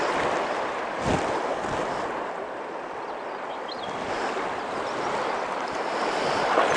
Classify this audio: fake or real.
real